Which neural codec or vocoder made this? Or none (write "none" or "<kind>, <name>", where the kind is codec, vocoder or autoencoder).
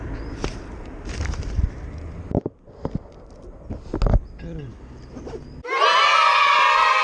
none